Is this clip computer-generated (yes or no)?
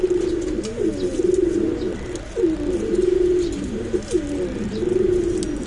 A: no